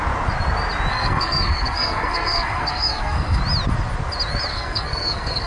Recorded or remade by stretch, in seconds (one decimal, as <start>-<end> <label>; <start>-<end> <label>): 0.0-0.9 recorded; 0.9-3.4 remade; 3.4-4.5 recorded; 4.5-5.5 remade